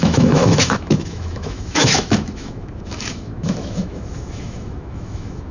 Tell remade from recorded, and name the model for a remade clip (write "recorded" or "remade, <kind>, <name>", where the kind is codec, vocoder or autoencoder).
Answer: remade, autoencoder, DAC-VAE